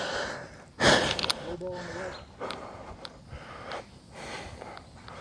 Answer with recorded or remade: recorded